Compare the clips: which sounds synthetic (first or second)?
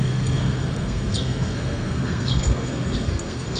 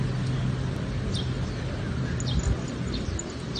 first